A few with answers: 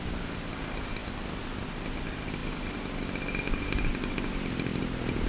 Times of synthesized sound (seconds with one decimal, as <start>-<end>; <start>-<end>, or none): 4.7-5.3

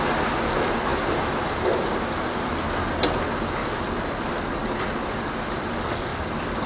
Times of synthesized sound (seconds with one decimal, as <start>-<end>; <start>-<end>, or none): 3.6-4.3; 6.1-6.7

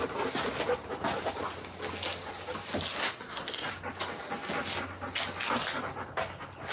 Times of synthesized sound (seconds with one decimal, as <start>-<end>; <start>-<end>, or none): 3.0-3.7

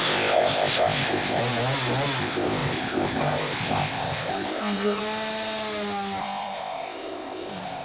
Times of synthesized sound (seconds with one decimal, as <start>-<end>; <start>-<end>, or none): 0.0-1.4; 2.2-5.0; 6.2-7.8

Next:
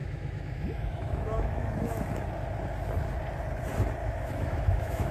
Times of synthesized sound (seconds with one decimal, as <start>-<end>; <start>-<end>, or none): 0.0-2.0; 4.0-5.1